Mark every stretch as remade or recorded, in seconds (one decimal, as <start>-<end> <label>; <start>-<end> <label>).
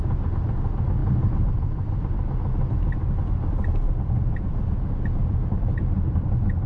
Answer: 0.0-6.7 recorded